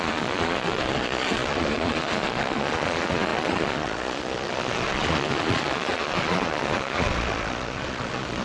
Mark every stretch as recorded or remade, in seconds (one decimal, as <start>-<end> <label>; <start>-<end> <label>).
0.0-8.4 remade